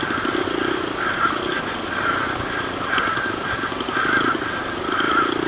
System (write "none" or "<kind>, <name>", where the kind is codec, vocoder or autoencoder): none